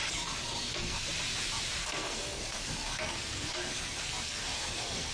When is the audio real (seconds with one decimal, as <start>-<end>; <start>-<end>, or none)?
1.1-1.8